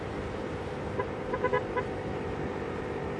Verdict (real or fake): fake